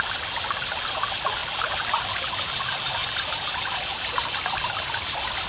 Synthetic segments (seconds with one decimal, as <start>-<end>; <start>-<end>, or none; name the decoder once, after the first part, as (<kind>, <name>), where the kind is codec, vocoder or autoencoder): none